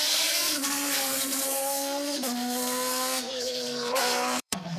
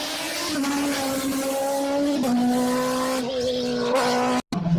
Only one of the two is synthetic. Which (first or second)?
first